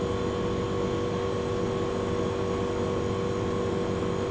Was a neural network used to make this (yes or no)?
no